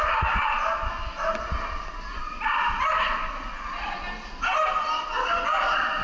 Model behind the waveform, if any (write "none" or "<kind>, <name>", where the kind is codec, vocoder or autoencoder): none